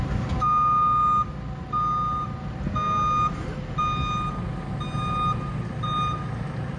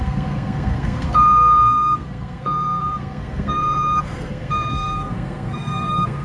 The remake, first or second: second